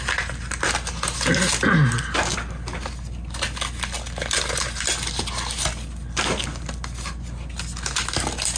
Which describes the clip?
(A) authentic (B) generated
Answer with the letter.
A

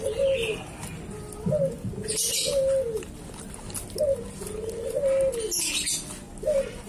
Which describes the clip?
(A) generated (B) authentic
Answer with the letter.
B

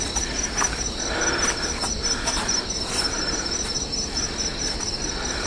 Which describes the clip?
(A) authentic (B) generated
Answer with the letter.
B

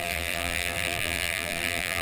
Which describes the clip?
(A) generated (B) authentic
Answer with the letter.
A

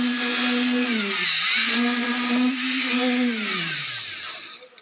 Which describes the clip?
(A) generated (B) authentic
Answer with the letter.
B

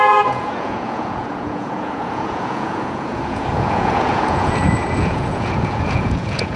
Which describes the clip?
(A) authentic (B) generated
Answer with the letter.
B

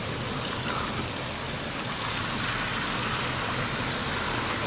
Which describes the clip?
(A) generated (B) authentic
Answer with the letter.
B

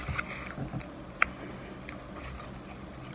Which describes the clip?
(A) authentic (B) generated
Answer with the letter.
A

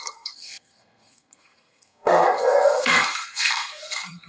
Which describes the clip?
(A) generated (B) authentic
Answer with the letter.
A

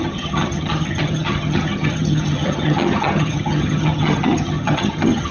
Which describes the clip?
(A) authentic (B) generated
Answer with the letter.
B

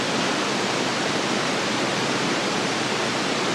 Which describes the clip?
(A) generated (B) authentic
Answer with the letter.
B